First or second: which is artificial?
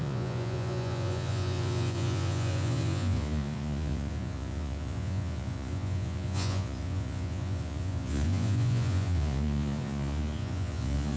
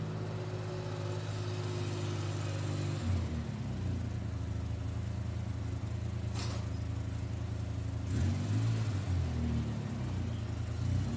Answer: first